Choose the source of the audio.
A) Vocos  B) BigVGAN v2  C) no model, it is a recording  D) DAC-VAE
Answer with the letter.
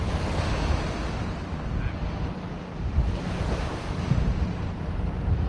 C